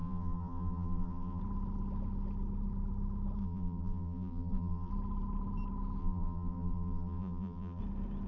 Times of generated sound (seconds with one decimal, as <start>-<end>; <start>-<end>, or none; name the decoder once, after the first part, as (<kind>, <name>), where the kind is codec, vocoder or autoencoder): 0.0-1.4 (vocoder, BigVGAN v2); 3.4-4.9; 6.0-7.8